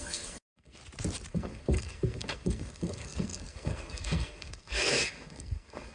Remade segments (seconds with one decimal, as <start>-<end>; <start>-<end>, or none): 0.0-0.8; 1.3-5.9